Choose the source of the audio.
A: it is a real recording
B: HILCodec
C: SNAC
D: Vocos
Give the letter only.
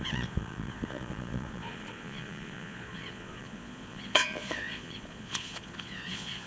D